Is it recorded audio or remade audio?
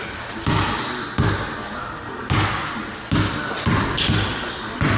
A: recorded